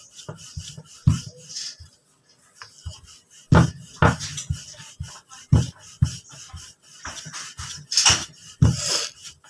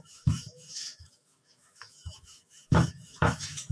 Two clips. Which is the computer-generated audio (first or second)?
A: second